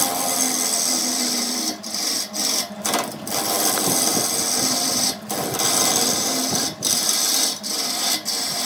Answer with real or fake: fake